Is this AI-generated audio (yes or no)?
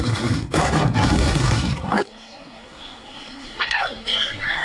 yes